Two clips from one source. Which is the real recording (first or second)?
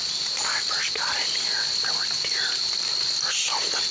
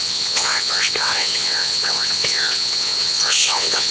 first